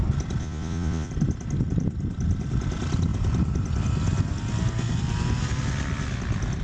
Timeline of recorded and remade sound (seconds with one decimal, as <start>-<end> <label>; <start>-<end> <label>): 0.0-0.4 recorded; 0.4-1.1 remade; 1.1-6.6 recorded